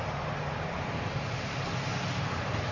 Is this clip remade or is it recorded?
remade